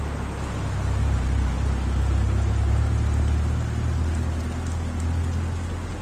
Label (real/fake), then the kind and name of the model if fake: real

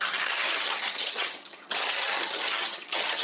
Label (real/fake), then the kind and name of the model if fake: fake, vocoder, HiFi-GAN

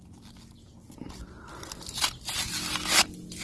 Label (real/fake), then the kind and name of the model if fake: real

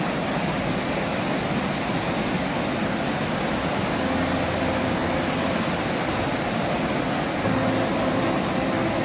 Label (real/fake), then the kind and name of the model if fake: real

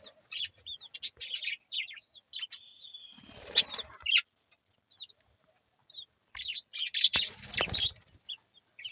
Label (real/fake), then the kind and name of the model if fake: real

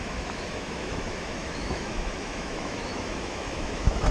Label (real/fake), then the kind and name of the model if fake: fake, autoencoder, DAC-VAE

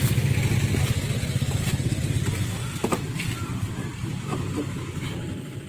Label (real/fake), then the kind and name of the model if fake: real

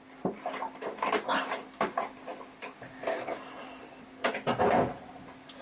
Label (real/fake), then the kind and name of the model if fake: real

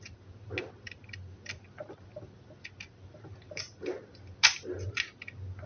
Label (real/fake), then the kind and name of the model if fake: real